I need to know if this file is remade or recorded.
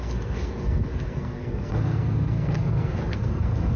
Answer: remade